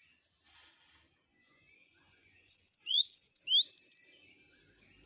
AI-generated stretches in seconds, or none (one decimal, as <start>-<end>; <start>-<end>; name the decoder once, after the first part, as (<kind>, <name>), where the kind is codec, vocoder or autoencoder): 1.3-3.4 (vocoder, Vocos)